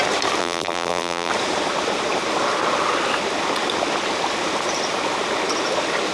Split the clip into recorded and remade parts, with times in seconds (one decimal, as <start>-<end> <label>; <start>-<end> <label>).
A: 0.0-0.4 recorded; 0.4-1.3 remade; 1.3-6.1 recorded